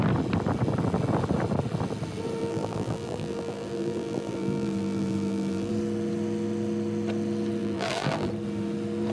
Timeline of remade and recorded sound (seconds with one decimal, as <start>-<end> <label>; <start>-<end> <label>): 0.0-2.4 recorded; 2.4-5.7 remade; 5.7-7.6 recorded; 7.6-8.3 remade; 8.3-9.1 recorded